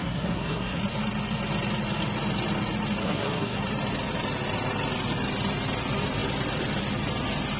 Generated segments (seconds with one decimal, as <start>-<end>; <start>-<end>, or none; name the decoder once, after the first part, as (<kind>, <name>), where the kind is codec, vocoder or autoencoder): 0.0-0.8 (codec, SNAC); 3.0-3.6